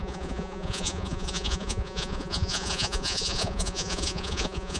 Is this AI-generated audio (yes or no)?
yes